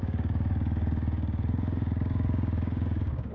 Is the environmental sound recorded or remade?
remade